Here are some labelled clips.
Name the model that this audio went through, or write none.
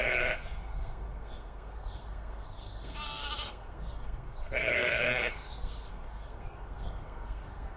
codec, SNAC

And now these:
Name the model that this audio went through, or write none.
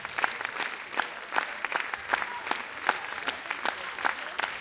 none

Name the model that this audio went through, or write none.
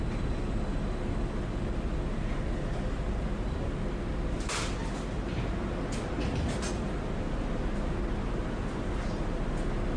none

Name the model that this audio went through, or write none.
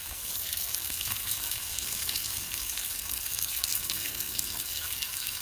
codec, SNAC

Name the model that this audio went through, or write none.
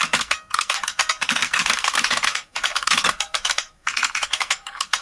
codec, SNAC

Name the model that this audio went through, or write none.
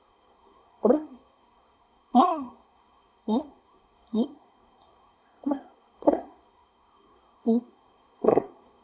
codec, SNAC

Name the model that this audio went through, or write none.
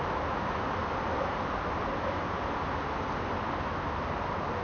none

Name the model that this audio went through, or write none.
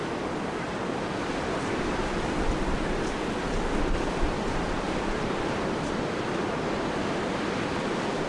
none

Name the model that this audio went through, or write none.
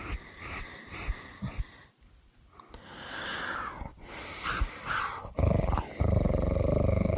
none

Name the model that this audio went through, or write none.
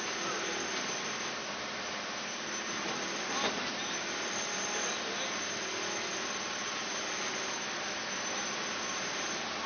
none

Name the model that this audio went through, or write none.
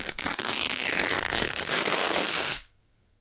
codec, SNAC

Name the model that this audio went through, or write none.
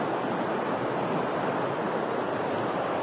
none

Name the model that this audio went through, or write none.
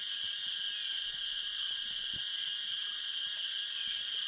none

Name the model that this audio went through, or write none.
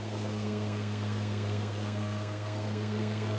codec, SNAC